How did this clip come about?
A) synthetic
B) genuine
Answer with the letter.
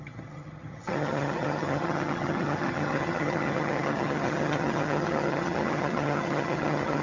A